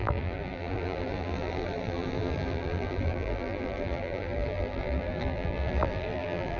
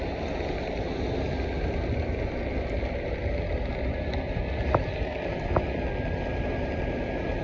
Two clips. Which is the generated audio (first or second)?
first